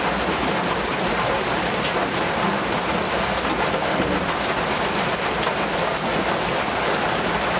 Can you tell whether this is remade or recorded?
recorded